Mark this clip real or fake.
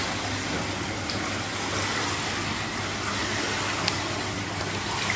real